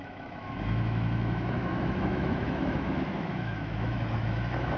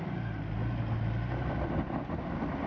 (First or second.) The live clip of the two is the second